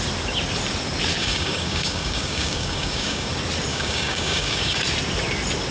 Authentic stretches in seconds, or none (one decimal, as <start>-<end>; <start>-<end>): 0.0-1.2; 3.3-3.7; 4.8-5.7